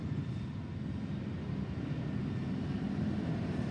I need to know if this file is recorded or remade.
recorded